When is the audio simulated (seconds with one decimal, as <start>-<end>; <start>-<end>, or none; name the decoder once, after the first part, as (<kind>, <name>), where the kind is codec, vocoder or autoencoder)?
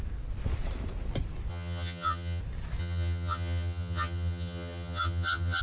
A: 1.5-2.4 (vocoder, HiFi-GAN); 2.8-5.6